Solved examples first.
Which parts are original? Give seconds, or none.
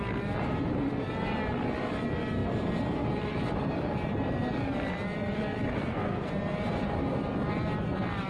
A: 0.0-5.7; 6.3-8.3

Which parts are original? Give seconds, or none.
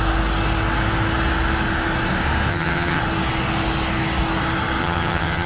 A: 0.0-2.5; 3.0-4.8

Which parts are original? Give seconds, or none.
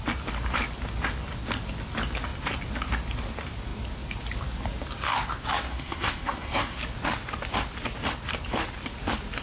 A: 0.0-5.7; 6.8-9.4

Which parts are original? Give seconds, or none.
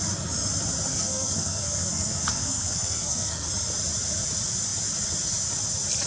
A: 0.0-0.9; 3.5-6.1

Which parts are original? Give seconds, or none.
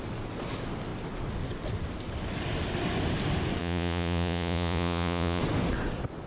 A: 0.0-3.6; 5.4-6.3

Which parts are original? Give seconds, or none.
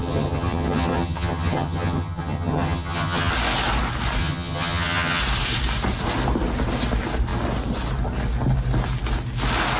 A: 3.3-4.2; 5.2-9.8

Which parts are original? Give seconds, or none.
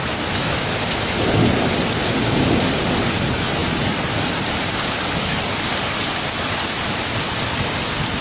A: 1.2-8.2